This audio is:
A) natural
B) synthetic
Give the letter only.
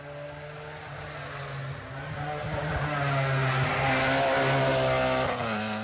A